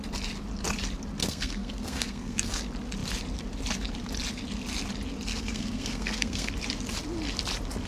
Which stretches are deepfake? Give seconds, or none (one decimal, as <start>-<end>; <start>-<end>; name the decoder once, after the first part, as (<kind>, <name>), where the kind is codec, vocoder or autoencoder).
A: 1.2-2.6 (codec, SNAC); 5.3-6.5